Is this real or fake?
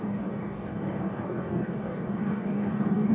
fake